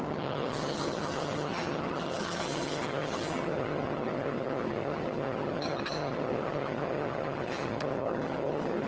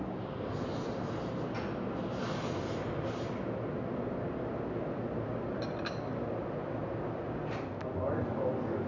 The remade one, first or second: first